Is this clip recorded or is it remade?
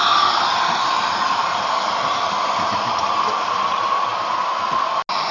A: recorded